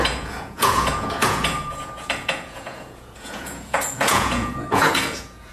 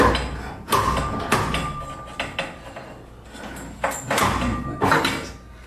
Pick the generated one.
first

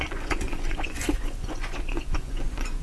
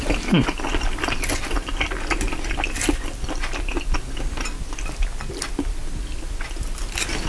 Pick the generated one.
first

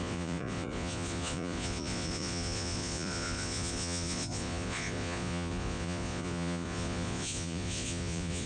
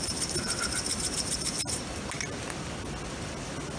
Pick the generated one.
first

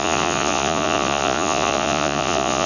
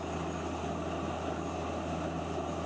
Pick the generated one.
first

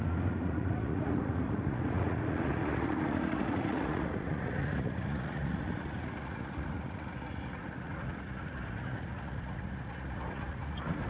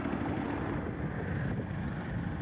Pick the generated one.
first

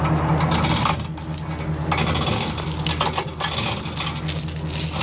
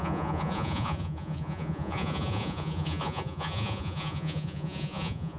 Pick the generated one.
second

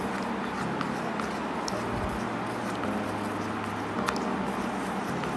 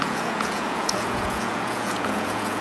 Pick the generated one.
second